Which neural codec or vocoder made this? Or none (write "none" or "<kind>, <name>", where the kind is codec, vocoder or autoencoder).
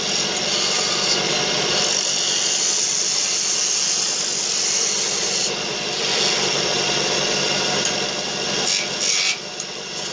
none